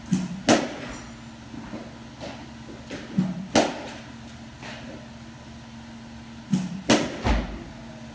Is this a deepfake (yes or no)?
no